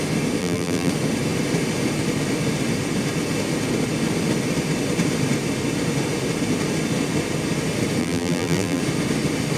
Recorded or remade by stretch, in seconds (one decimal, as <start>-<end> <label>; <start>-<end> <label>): 0.0-0.4 recorded; 0.4-0.9 remade; 0.9-8.0 recorded; 8.0-8.8 remade; 8.8-9.6 recorded